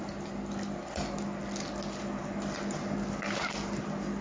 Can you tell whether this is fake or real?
real